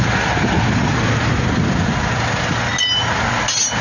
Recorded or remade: recorded